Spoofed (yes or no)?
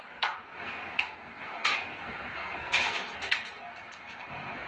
yes